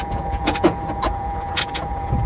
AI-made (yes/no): yes